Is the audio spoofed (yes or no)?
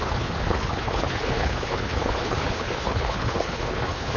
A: yes